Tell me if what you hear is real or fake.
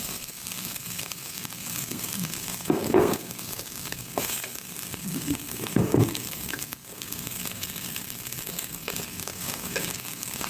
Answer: fake